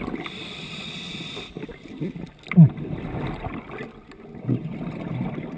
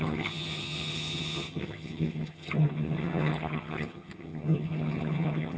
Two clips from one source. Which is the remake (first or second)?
second